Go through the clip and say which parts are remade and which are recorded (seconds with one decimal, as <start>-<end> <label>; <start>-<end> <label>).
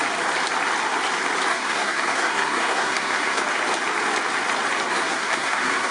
0.0-1.5 recorded; 1.5-3.4 remade; 3.4-4.9 recorded; 4.9-5.9 remade